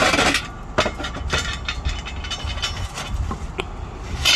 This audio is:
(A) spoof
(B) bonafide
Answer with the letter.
B